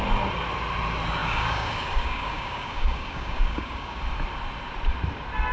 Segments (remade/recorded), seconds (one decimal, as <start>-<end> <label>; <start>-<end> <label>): 0.0-1.2 recorded; 1.2-4.0 remade; 4.0-5.5 recorded